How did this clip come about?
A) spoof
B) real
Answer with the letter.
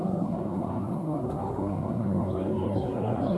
A